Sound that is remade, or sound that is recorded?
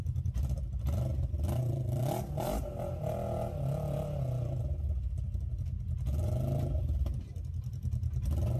recorded